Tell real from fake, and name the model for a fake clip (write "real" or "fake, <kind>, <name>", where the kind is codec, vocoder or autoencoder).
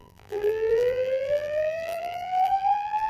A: fake, vocoder, BigVGAN v2